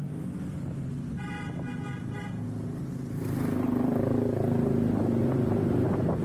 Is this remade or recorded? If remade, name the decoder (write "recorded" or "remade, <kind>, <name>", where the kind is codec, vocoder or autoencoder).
recorded